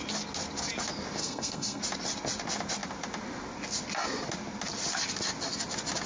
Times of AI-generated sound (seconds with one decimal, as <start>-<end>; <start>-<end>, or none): 1.2-1.8